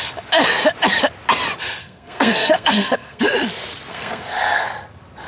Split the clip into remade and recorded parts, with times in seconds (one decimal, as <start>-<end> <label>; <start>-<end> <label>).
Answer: 0.0-1.8 recorded; 1.8-3.2 remade; 3.2-3.9 recorded; 3.9-4.7 remade; 4.7-5.3 recorded